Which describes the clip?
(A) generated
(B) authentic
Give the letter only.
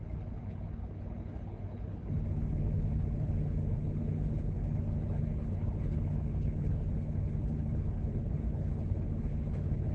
A